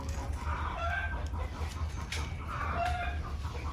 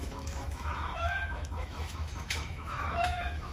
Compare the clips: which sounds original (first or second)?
first